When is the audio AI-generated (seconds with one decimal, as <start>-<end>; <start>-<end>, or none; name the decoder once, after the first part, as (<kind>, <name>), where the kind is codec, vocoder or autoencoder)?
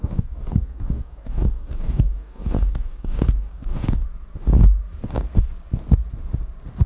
0.0-4.0 (codec, DAC)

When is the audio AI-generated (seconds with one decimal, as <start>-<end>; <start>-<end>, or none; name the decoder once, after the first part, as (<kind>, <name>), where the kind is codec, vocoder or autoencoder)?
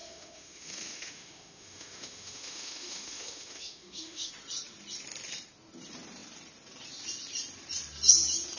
0.0-4.3 (autoencoder, DAC-VAE)